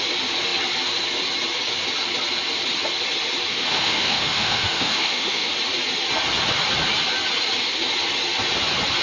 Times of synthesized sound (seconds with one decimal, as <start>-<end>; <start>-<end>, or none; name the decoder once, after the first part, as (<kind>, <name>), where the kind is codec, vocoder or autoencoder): 3.5-5.5 (autoencoder, DAC-VAE)